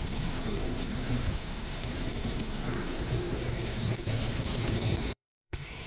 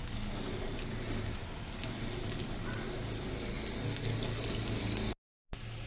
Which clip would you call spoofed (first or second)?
first